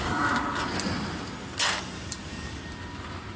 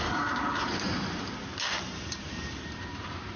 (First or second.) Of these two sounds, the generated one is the second